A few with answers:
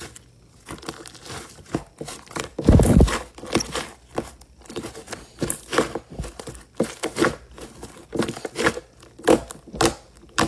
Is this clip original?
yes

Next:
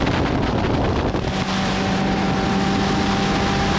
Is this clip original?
yes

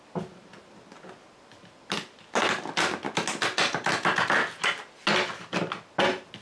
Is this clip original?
yes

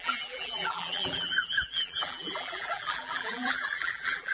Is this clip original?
no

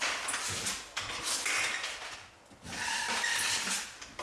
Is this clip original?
yes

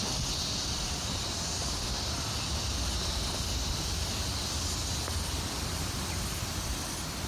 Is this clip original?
yes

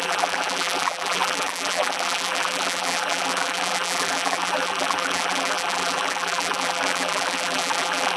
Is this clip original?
no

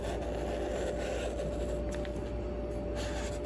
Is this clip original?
yes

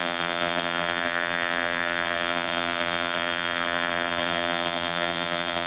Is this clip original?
no